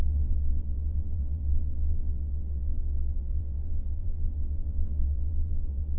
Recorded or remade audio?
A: remade